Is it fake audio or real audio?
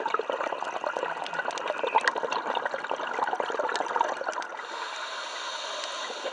real